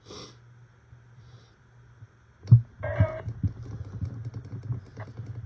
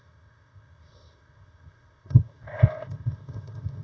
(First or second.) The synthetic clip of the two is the second